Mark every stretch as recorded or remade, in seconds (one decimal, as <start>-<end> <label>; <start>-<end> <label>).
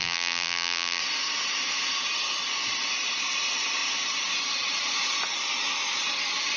0.0-1.0 remade; 1.0-6.6 recorded